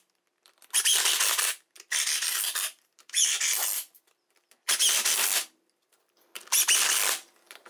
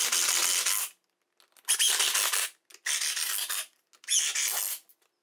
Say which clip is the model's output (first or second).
first